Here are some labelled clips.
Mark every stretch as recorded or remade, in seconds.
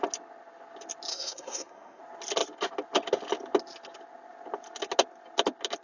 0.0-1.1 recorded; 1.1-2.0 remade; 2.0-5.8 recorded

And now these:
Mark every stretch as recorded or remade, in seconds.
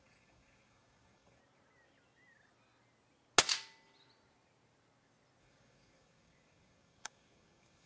0.0-1.4 remade; 1.4-5.4 recorded; 5.4-7.9 remade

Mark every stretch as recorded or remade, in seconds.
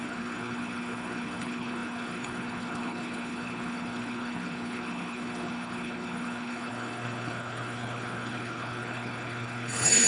0.0-10.1 remade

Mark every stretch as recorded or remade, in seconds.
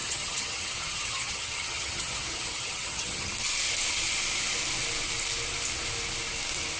0.0-3.3 remade; 3.3-6.8 recorded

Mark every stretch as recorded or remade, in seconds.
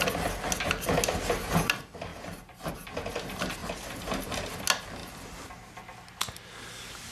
0.0-2.1 recorded; 2.1-2.7 remade; 2.7-3.6 recorded; 3.6-4.5 remade; 4.5-7.1 recorded